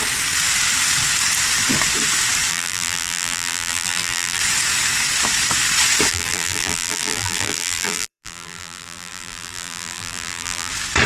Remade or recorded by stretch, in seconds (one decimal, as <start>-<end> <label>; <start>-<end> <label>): 0.0-2.5 recorded; 2.5-4.4 remade; 4.4-6.1 recorded; 6.1-10.7 remade; 10.7-11.1 recorded